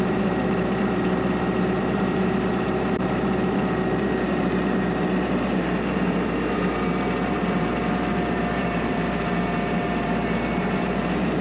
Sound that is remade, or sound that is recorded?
remade